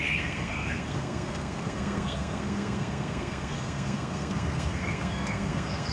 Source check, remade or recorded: remade